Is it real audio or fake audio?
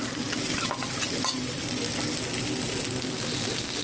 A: real